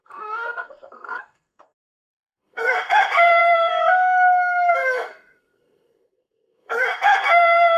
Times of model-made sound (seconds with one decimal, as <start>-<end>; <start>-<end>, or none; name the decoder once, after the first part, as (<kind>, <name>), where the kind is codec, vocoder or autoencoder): 0.0-3.8 (codec, SNAC); 4.7-7.8